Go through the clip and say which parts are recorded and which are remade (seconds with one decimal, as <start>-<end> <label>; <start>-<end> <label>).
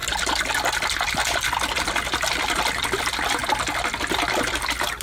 0.0-5.0 recorded